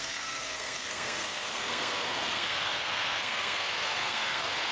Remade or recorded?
remade